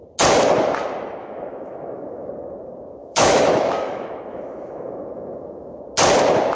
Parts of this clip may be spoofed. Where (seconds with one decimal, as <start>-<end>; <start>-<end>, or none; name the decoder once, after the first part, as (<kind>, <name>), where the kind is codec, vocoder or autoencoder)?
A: 1.2-2.3 (autoencoder, DAC-VAE); 3.0-5.8